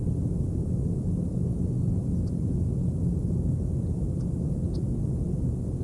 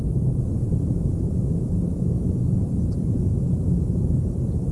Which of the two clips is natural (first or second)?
first